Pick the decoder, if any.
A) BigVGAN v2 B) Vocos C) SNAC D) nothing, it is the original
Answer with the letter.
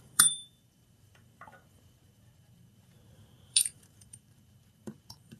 A